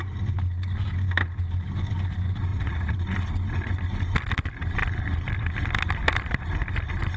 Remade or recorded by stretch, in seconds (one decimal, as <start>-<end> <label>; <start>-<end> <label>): 0.0-2.5 recorded; 2.5-3.3 remade; 3.3-7.2 recorded